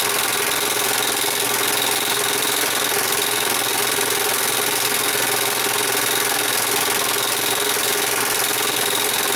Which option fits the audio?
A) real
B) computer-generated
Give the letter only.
A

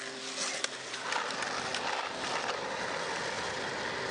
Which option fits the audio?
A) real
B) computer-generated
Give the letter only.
A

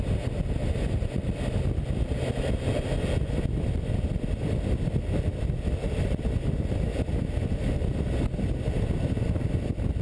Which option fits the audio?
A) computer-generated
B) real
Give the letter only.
B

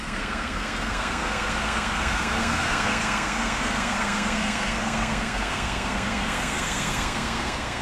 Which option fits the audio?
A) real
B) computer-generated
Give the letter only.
B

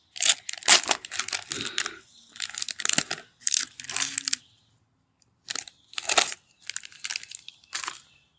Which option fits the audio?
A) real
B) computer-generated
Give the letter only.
A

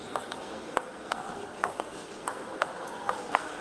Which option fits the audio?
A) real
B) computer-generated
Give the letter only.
B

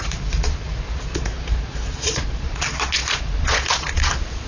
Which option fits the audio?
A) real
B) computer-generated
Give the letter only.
B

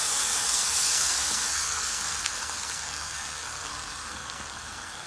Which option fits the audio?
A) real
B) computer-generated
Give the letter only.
B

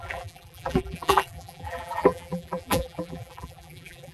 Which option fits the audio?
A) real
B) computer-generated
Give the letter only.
B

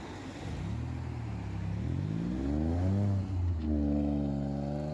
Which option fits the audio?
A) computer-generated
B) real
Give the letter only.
B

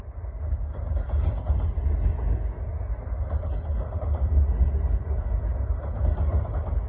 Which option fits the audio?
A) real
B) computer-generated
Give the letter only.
A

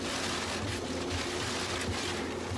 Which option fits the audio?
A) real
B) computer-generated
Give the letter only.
B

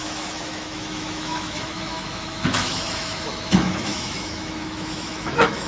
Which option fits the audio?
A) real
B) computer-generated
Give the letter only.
B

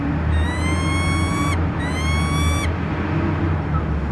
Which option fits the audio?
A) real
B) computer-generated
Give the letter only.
A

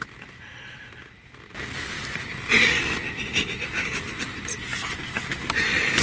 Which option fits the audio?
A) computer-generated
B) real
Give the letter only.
B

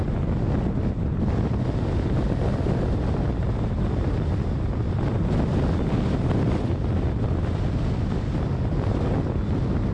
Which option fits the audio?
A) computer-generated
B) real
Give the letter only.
B